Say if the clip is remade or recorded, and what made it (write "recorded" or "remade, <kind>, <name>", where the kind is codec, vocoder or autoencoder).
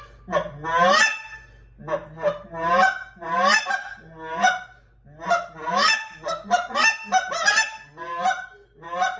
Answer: recorded